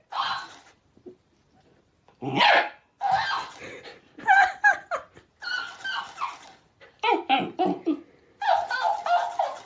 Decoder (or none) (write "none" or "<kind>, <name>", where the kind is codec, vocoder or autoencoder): none